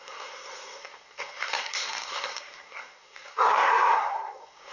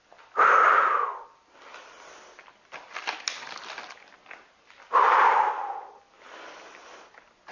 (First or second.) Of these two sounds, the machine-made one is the first